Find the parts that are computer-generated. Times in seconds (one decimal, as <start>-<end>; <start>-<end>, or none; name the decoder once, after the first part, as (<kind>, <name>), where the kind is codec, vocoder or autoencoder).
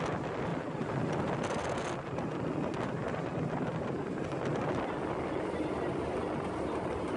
none